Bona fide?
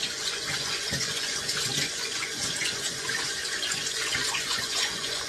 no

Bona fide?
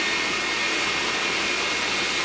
yes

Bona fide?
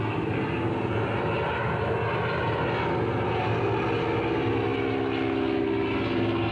yes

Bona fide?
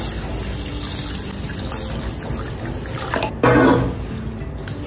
yes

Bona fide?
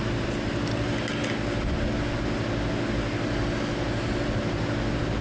yes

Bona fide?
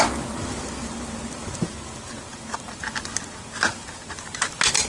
yes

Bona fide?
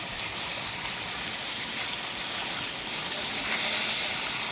yes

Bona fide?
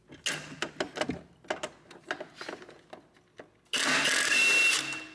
yes